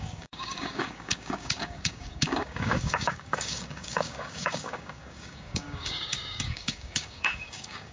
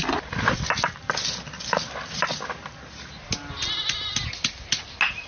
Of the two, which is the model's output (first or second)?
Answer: first